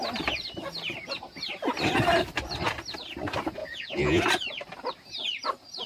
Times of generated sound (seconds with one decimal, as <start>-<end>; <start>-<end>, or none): 3.6-4.2